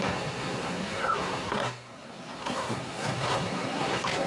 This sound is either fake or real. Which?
fake